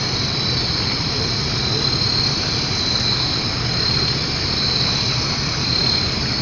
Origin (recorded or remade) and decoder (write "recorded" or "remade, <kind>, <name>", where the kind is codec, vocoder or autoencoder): recorded